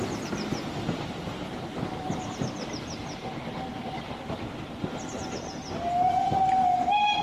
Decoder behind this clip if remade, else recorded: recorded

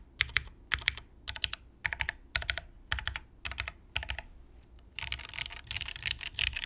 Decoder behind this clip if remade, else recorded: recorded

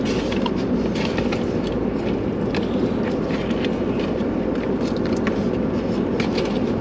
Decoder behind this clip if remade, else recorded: recorded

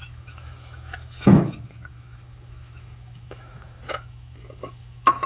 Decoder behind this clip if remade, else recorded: remade, autoencoder, DAC-VAE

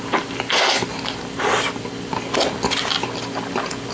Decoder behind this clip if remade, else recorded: recorded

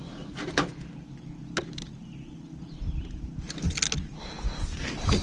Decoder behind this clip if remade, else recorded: recorded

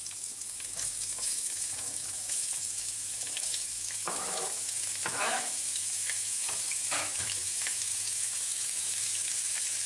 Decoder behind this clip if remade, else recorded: remade, autoencoder, DAC-VAE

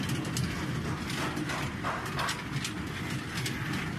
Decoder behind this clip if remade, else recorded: recorded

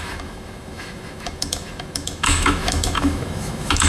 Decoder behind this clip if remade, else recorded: remade, autoencoder, DAC-VAE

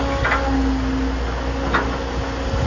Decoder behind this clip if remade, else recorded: recorded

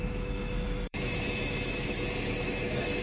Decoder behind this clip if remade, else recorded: remade, autoencoder, DAC-VAE